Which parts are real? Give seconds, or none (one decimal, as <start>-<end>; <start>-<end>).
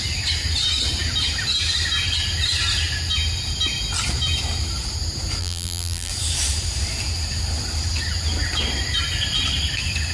0.0-5.4; 6.1-10.1